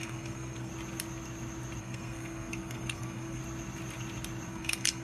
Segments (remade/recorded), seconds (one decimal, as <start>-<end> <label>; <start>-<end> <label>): 0.0-0.7 remade; 0.7-1.8 recorded; 1.8-3.4 remade; 3.4-4.5 recorded; 4.5-5.0 remade